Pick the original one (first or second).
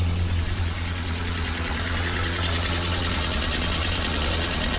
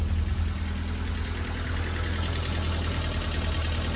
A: second